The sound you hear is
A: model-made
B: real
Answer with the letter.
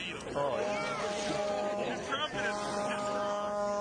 B